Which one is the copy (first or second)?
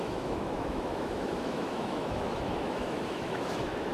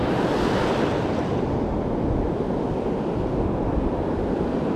first